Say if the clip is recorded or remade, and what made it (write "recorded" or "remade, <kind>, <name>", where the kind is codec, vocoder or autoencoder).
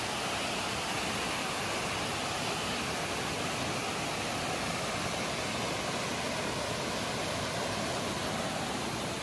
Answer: recorded